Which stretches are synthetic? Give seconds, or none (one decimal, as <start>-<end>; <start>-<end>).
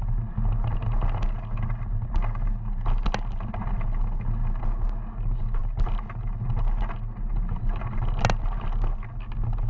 none